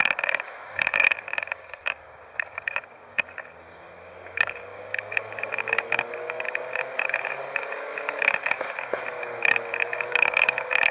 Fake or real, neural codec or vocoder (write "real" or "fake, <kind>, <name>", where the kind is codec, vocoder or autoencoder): fake, codec, DAC